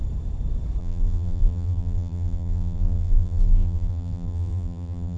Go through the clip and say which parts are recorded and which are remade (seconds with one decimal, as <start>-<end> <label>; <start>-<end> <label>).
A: 0.0-0.8 recorded; 0.8-5.2 remade

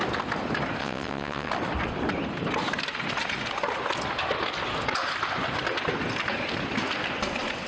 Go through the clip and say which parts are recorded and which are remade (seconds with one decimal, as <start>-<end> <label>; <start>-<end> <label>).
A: 0.0-0.8 recorded; 0.8-1.5 remade; 1.5-7.7 recorded

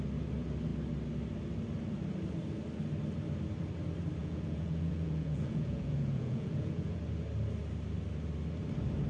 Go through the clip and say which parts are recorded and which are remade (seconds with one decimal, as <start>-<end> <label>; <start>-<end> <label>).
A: 0.0-4.2 recorded; 4.2-7.0 remade; 7.0-9.1 recorded

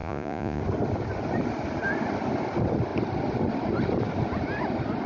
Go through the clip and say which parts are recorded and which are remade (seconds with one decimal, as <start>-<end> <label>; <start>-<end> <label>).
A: 0.0-0.6 remade; 0.6-5.1 recorded

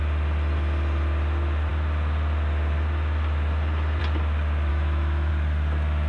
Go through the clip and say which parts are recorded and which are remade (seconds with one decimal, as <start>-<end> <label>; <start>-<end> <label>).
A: 0.0-4.7 recorded; 4.7-5.3 remade; 5.3-6.1 recorded

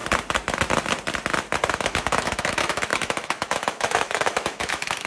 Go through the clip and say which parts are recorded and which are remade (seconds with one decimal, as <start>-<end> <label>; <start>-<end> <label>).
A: 0.0-1.7 recorded; 1.7-5.1 remade

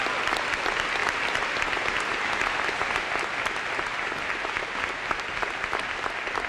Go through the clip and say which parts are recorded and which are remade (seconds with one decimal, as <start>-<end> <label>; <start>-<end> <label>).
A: 0.0-6.5 recorded